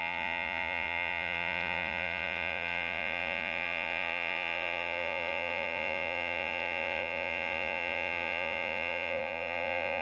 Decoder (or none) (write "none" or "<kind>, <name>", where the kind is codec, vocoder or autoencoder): vocoder, Vocos